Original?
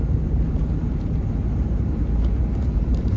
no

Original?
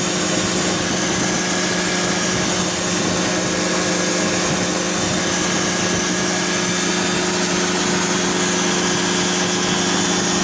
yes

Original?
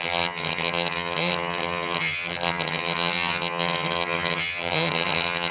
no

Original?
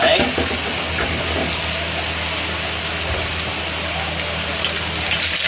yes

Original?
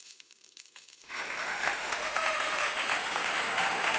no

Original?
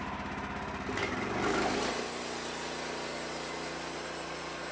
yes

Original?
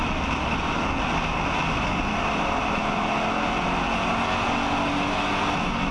yes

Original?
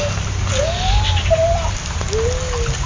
yes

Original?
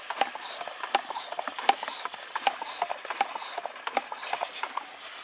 yes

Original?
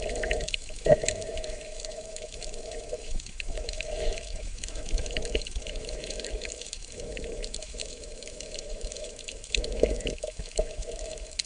no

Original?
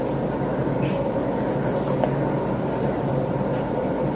yes